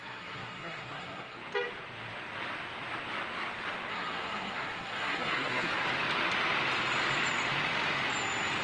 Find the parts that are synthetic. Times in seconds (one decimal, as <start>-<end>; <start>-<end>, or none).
0.0-1.4; 3.9-5.7